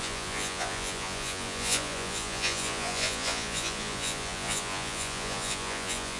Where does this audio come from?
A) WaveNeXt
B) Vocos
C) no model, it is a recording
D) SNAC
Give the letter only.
B